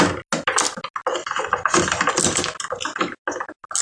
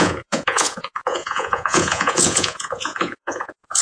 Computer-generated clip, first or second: second